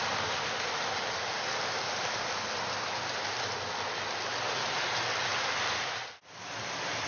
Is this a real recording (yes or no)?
yes